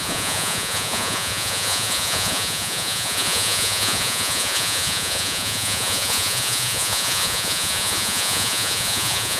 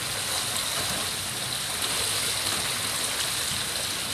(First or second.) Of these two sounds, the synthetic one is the first